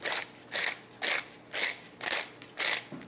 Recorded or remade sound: recorded